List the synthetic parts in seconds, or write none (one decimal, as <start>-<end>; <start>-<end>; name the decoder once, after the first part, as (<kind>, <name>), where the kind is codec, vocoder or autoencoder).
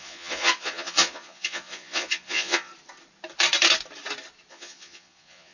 0.0-2.7 (vocoder, Vocos); 4.5-5.5